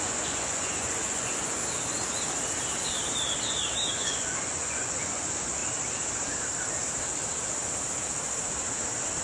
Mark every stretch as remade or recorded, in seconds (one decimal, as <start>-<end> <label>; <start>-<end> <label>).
0.0-1.6 remade; 1.6-3.9 recorded; 3.9-5.6 remade; 5.6-9.2 recorded